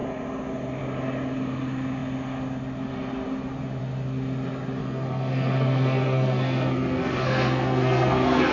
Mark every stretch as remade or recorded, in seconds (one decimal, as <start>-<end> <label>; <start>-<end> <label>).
0.0-4.8 recorded; 4.8-8.5 remade